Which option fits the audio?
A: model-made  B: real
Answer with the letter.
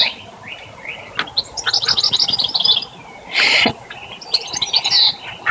B